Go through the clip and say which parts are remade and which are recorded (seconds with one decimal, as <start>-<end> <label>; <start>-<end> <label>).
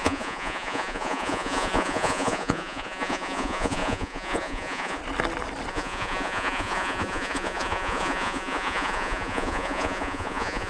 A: 0.0-5.0 remade; 5.0-5.7 recorded; 5.7-10.7 remade